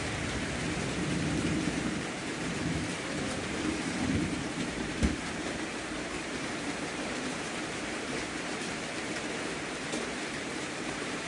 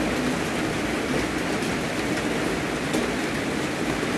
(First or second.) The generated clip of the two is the first